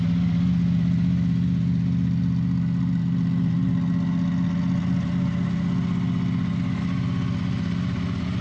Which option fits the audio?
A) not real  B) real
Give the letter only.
B